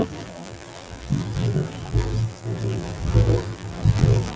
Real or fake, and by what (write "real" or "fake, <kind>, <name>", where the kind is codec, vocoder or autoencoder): fake, vocoder, BigVGAN v2